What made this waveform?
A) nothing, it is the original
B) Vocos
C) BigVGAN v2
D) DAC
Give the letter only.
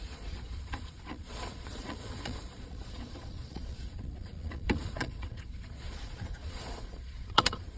B